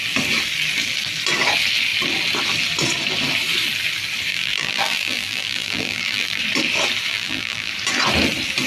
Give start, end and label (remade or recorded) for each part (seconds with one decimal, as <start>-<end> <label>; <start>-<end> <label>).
0.0-4.3 recorded; 4.3-6.4 remade; 6.4-7.1 recorded; 7.1-7.7 remade; 7.7-8.7 recorded

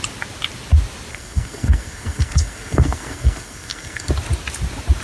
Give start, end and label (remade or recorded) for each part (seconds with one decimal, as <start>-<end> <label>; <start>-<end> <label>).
0.0-1.1 recorded; 1.1-4.1 remade; 4.1-5.0 recorded

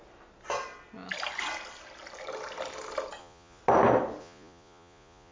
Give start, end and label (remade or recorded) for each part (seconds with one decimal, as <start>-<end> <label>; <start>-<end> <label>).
0.0-3.2 recorded; 3.2-3.6 remade; 3.6-4.2 recorded; 4.2-5.3 remade

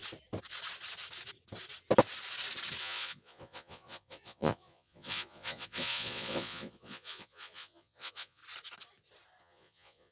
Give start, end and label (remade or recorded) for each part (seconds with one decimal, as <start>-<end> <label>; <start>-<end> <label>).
0.0-2.8 recorded; 2.8-8.4 remade; 8.4-9.4 recorded; 9.4-10.1 remade

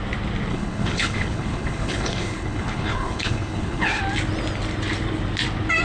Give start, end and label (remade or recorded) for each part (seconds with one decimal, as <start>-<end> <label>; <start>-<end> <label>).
0.0-0.5 recorded; 0.5-4.0 remade; 4.0-5.8 recorded

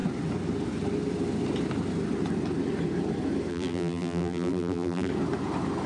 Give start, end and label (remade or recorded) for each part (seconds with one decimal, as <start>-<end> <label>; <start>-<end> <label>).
0.0-3.5 recorded; 3.5-5.1 remade; 5.1-5.9 recorded

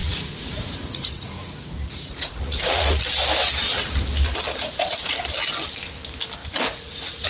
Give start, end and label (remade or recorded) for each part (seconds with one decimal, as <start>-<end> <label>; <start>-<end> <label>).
0.0-3.0 remade; 3.0-4.6 recorded; 4.6-5.2 remade; 5.2-6.4 recorded; 6.4-7.3 remade

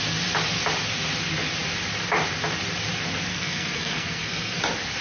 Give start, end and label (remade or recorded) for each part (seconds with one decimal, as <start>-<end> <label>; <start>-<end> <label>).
0.0-3.3 recorded; 3.3-4.6 remade; 4.6-5.0 recorded